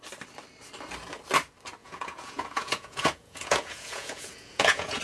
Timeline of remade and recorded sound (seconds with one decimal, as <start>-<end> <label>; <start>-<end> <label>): 0.0-1.8 recorded; 1.8-5.0 remade